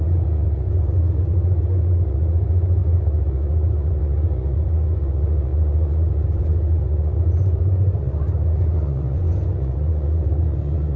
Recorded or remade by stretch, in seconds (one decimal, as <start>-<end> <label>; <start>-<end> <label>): 0.0-11.0 remade